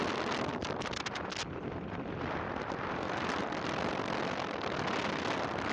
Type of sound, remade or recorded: remade